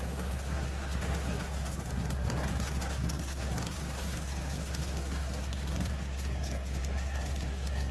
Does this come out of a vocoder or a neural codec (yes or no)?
yes